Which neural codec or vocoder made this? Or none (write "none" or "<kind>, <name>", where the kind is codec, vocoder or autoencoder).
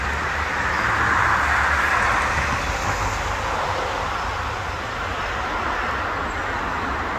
none